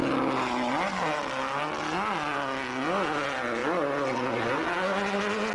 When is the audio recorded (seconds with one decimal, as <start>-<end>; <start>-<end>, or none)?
0.0-5.5